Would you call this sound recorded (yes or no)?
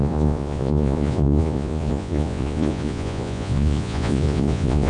no